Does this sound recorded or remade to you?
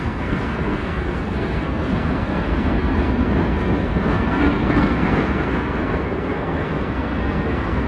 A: remade